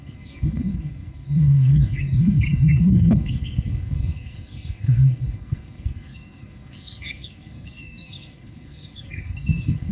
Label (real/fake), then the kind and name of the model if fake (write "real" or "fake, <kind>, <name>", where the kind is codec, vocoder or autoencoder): fake, codec, SNAC